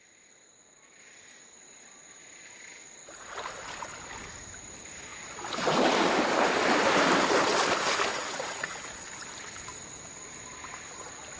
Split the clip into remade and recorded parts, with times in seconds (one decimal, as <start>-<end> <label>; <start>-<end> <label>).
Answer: 0.0-8.1 recorded; 8.1-8.8 remade; 8.8-11.4 recorded